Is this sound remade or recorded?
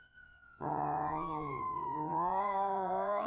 remade